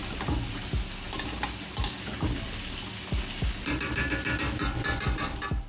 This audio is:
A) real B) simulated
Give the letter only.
A